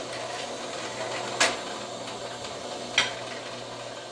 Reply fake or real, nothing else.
real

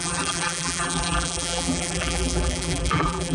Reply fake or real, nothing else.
fake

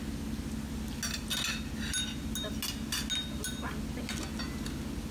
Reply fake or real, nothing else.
real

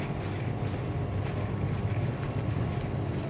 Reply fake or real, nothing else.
real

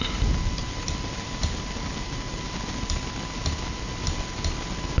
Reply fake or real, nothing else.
real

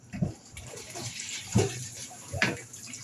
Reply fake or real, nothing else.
fake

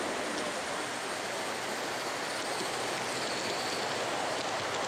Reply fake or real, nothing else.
real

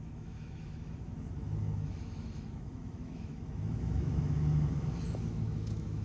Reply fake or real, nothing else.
fake